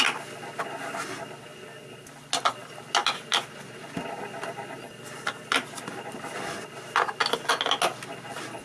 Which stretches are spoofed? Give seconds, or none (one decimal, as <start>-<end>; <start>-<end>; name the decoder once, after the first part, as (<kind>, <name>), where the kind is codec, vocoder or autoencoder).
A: none